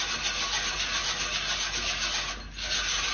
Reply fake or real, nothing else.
real